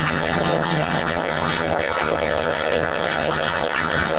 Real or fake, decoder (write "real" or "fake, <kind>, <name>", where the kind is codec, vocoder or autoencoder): fake, vocoder, HiFi-GAN